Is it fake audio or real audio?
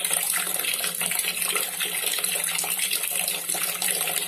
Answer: real